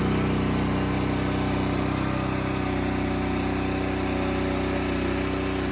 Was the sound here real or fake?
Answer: real